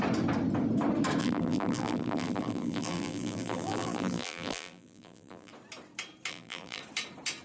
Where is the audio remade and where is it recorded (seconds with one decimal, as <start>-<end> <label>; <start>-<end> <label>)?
0.0-1.2 recorded; 1.2-5.5 remade; 5.5-6.3 recorded; 6.3-6.8 remade; 6.8-7.4 recorded

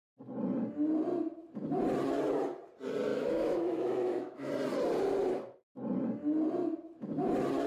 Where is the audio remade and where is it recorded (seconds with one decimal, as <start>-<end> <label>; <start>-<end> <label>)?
0.0-3.1 recorded; 3.1-4.5 remade; 4.5-7.7 recorded

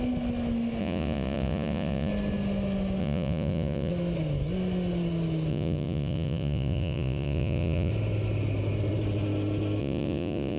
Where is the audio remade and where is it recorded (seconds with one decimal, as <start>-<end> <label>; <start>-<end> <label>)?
0.0-0.8 recorded; 0.8-2.1 remade; 2.1-3.0 recorded; 3.0-3.9 remade; 3.9-5.5 recorded; 5.5-7.9 remade; 7.9-9.8 recorded; 9.8-10.6 remade